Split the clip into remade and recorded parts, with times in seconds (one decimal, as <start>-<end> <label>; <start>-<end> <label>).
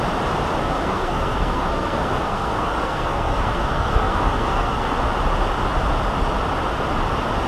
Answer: 0.0-0.6 recorded; 0.6-5.0 remade; 5.0-7.5 recorded